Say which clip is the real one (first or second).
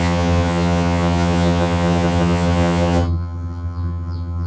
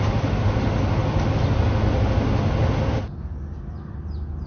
second